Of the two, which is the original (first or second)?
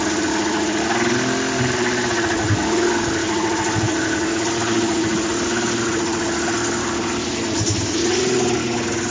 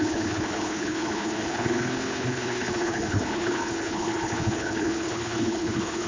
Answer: first